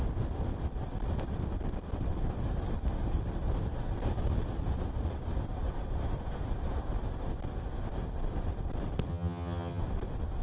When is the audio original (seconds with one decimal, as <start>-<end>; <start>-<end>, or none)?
0.0-9.1; 9.8-10.4